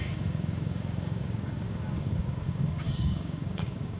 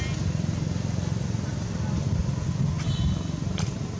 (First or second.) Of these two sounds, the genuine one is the second